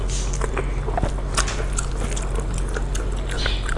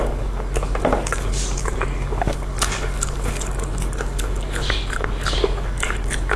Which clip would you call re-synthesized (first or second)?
second